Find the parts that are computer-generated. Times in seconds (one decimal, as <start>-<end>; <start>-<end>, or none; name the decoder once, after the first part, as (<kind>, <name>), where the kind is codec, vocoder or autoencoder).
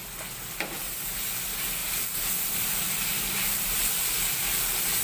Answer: 1.8-5.0 (vocoder, BigVGAN v2)